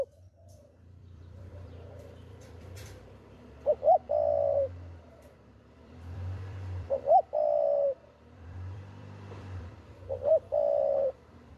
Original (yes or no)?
no